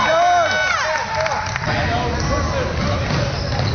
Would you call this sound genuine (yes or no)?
yes